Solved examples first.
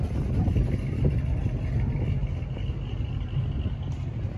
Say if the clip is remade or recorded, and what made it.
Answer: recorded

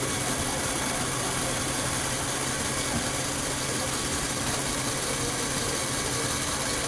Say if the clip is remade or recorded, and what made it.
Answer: recorded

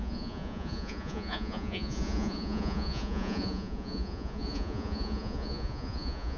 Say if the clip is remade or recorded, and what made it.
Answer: remade, vocoder, Vocos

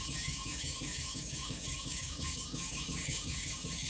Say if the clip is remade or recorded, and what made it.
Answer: remade, codec, DAC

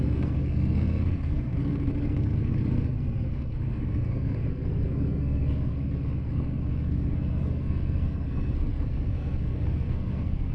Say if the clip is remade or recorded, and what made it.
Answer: remade, codec, SNAC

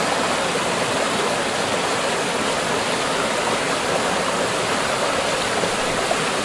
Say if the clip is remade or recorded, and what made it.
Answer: recorded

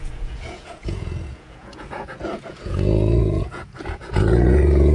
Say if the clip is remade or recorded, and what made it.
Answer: remade, vocoder, Vocos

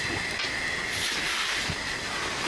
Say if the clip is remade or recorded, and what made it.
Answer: recorded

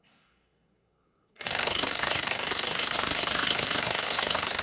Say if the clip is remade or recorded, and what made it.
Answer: remade, codec, SNAC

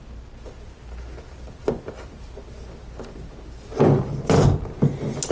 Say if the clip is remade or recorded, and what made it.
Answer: recorded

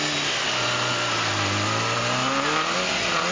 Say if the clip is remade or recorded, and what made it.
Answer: recorded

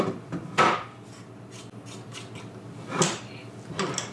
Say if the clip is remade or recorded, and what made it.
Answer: recorded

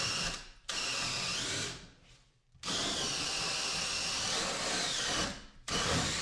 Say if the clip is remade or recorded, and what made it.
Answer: recorded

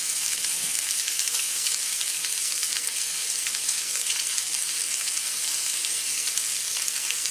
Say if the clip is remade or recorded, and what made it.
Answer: remade, codec, SNAC